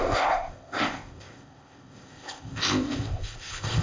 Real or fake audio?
fake